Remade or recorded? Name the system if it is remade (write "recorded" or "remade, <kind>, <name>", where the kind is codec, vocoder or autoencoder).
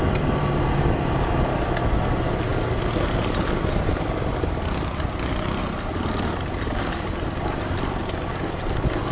recorded